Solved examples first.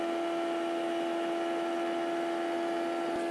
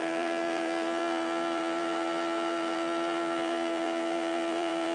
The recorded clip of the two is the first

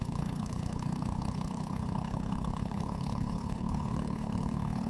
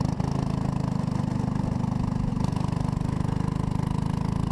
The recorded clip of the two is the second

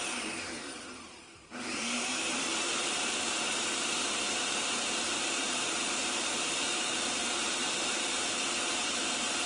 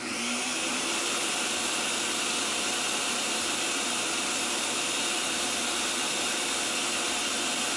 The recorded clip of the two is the second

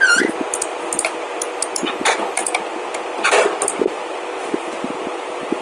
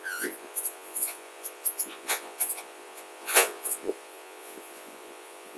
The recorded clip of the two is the first